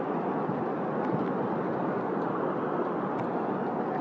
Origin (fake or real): real